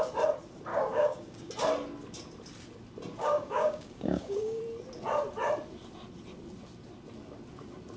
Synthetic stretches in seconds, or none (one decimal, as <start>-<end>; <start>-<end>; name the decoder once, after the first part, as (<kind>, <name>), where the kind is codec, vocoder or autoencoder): 0.7-1.5 (codec, DAC); 3.2-4.6